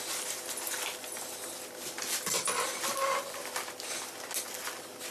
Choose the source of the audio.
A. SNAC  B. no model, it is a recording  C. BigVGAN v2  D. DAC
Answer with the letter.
B